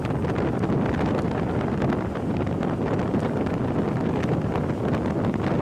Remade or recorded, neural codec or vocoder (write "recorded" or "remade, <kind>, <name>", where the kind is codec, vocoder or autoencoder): recorded